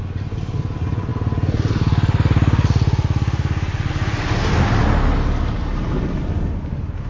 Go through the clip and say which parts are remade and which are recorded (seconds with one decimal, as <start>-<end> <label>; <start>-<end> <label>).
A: 0.0-7.1 recorded

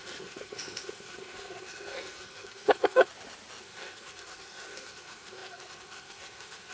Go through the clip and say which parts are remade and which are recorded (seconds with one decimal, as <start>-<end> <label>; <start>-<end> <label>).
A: 0.0-3.1 remade; 3.1-3.6 recorded; 3.6-6.7 remade

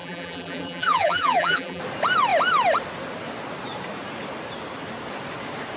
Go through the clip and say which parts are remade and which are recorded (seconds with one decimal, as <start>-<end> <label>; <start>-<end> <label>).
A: 0.0-1.8 remade; 1.8-5.8 recorded

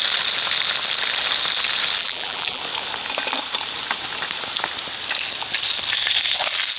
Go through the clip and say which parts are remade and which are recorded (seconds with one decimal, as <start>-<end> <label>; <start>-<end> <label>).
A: 0.0-2.0 recorded; 2.0-2.6 remade; 2.6-6.8 recorded

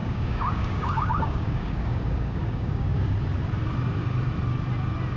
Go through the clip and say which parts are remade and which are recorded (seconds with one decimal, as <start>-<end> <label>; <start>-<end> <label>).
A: 0.0-3.1 remade; 3.1-5.2 recorded

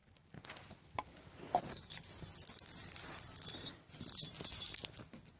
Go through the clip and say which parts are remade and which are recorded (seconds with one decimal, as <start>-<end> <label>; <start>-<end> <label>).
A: 0.0-5.4 recorded

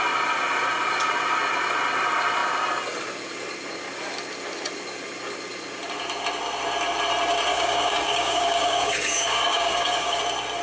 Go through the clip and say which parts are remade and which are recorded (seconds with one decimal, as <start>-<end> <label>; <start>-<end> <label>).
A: 0.0-7.5 recorded; 7.5-10.2 remade; 10.2-10.6 recorded

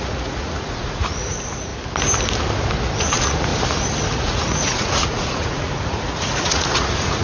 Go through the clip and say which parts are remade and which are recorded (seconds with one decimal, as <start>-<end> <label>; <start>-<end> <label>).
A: 0.0-1.7 remade; 1.7-3.0 recorded; 3.0-3.5 remade; 3.5-4.2 recorded; 4.2-7.2 remade